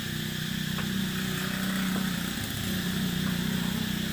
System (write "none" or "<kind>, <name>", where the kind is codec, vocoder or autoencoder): none